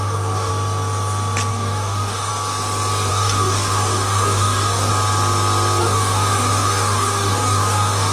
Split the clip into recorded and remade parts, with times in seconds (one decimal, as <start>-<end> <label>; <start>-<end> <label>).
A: 0.0-0.5 remade; 0.5-1.5 recorded; 1.5-2.3 remade; 2.3-3.1 recorded; 3.1-4.9 remade; 4.9-5.8 recorded; 5.8-8.1 remade